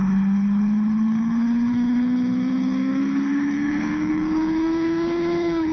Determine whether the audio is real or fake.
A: fake